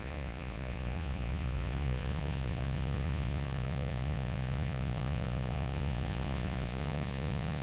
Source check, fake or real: fake